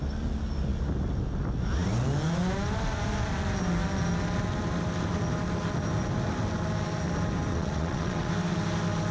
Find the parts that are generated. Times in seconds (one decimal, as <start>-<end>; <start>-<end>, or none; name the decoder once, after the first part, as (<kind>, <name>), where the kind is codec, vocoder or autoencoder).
7.5-8.3 (vocoder, WaveNeXt)

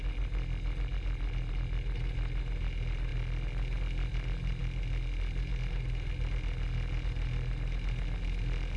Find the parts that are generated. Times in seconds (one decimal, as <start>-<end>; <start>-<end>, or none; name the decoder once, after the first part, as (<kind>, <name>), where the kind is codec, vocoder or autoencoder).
none

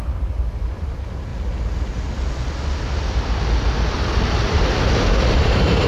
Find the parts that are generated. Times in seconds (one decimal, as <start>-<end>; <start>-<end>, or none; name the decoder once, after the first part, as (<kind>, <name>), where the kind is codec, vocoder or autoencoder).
0.0-1.3 (vocoder, BigVGAN v2); 4.2-5.9

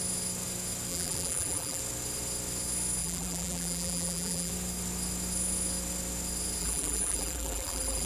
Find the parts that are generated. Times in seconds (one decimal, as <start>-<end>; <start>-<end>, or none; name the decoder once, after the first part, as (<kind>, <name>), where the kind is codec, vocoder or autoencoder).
0.9-1.8 (vocoder, BigVGAN v2); 3.0-4.5; 6.6-8.1

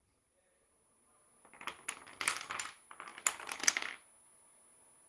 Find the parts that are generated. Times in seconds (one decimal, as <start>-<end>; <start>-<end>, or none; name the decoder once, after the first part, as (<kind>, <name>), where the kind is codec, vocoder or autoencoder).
none

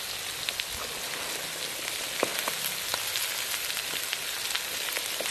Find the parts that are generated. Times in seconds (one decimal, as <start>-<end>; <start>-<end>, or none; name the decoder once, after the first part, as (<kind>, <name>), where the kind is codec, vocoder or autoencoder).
none